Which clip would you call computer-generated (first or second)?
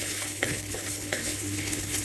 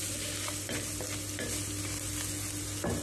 first